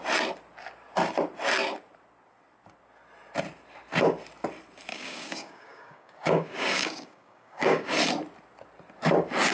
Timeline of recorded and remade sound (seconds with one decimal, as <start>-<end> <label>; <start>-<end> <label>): 0.0-4.9 recorded; 4.9-7.9 remade; 7.9-9.5 recorded